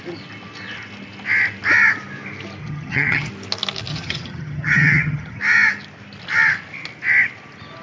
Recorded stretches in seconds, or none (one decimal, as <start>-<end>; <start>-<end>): 0.0-2.6; 3.3-3.9; 5.4-7.8